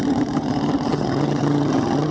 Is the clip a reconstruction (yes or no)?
yes